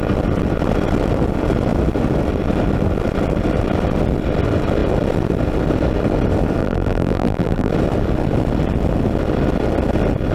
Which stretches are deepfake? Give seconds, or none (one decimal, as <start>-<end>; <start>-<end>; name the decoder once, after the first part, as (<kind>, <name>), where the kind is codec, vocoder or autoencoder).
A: 6.6-7.7 (vocoder, BigVGAN v2)